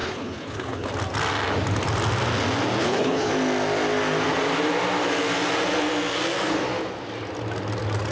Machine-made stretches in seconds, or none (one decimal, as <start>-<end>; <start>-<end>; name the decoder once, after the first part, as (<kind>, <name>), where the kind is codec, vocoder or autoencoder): 0.0-0.9 (codec, HILCodec); 2.8-3.3